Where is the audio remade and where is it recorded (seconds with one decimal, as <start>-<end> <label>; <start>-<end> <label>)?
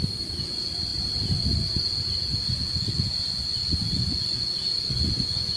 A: 0.0-2.3 recorded; 2.3-5.6 remade